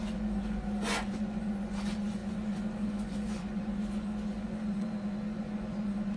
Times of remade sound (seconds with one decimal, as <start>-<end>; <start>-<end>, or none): 0.0-6.2